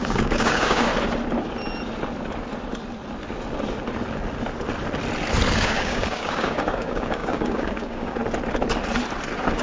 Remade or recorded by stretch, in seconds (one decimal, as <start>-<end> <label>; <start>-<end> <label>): 0.0-0.9 remade; 0.9-5.5 recorded; 5.5-8.2 remade; 8.2-9.6 recorded